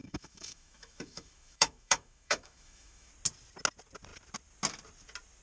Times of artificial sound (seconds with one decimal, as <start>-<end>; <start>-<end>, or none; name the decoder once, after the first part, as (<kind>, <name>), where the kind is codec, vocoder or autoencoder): 0.0-3.1 (autoencoder, DAC-VAE)